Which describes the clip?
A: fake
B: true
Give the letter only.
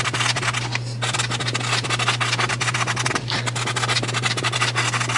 B